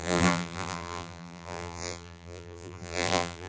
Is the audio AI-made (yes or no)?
yes